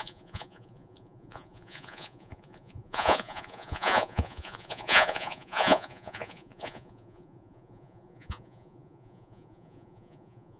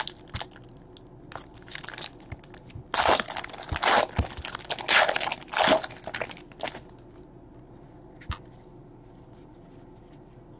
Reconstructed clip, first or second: first